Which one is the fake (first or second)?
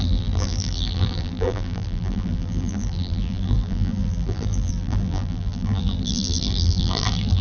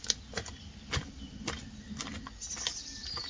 first